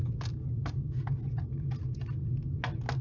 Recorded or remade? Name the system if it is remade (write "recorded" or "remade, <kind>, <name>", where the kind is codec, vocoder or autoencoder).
recorded